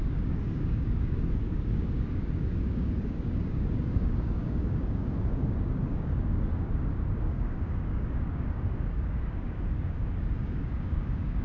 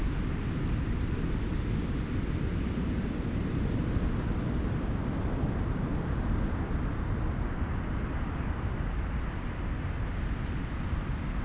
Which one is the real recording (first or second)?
second